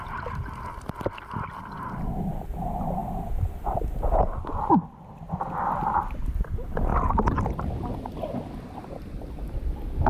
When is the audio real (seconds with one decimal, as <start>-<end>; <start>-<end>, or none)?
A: 3.0-4.2; 6.9-8.8